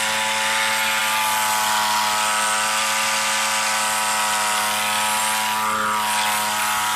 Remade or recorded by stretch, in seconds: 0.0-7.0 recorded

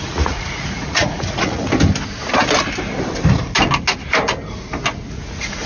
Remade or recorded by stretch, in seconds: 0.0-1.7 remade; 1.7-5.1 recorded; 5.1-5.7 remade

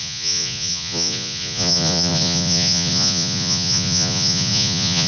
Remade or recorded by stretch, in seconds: 0.0-5.1 remade